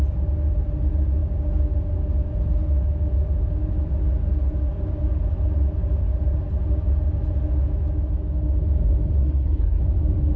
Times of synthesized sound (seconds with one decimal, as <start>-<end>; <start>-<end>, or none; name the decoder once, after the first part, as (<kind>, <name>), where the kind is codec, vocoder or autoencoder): 9.2-9.8 (codec, SNAC)